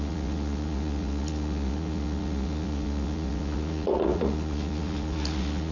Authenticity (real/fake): fake